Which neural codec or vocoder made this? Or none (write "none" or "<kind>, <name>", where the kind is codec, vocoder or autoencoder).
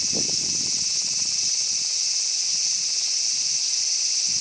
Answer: none